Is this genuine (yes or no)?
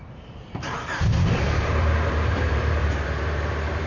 no